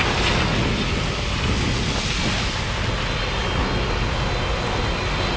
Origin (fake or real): real